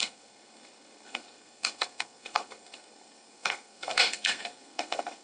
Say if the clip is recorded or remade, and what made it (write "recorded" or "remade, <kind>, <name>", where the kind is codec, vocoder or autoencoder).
remade, codec, SNAC